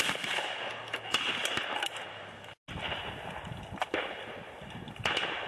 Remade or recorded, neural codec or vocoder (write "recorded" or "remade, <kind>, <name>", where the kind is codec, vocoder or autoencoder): recorded